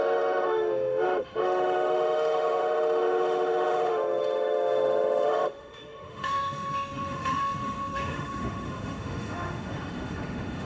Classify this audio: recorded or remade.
remade